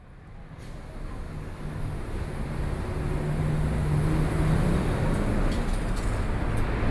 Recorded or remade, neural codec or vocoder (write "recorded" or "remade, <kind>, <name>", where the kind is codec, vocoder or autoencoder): recorded